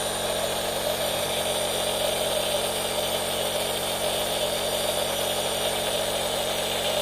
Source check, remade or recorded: remade